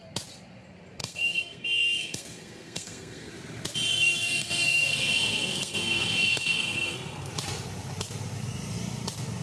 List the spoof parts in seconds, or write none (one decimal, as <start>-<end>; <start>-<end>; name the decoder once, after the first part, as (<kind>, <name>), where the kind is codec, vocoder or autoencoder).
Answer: 1.0-3.3 (codec, SNAC); 3.9-7.3